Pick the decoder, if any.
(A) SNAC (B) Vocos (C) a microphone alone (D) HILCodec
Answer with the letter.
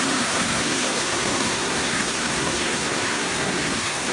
A